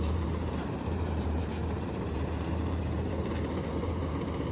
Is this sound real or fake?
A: fake